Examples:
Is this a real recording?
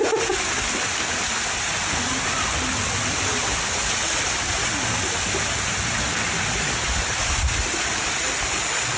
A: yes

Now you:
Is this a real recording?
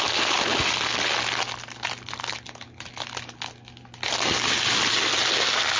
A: yes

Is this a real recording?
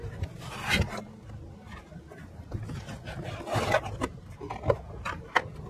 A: yes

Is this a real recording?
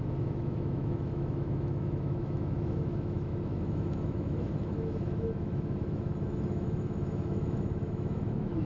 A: no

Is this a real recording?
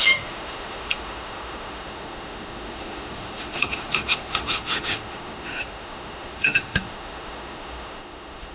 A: no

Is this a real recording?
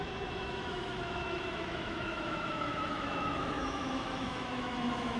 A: no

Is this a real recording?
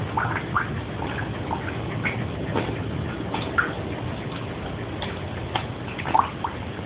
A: yes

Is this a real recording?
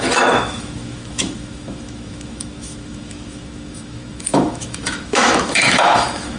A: no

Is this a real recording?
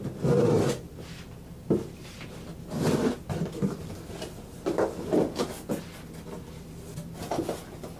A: yes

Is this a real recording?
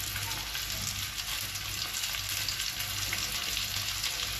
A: yes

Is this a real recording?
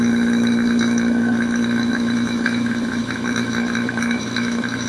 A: no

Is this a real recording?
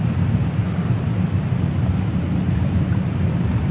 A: yes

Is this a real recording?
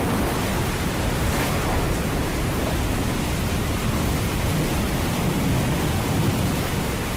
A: yes